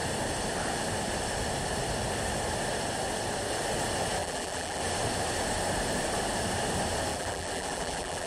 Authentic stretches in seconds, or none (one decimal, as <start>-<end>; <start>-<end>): 0.0-4.2; 4.8-7.1